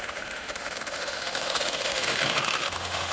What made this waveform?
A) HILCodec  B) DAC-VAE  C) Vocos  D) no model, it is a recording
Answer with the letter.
B